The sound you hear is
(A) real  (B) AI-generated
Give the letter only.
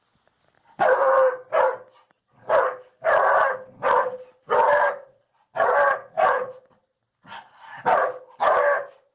A